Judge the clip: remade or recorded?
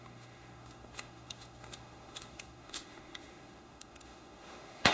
remade